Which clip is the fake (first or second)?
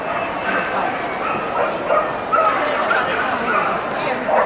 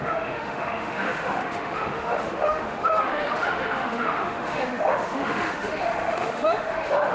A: second